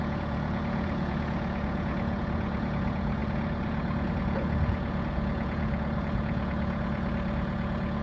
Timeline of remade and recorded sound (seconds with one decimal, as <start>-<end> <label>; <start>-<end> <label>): 0.0-8.0 remade

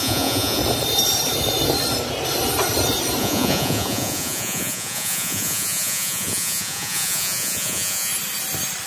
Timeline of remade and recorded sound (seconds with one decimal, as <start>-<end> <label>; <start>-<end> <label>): 0.0-0.6 remade; 0.6-3.2 recorded; 3.2-8.1 remade; 8.1-8.9 recorded